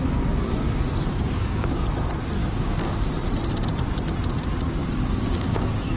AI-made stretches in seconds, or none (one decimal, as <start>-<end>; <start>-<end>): 1.1-1.8; 2.4-3.1; 4.8-5.6